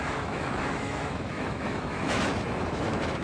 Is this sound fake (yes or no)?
yes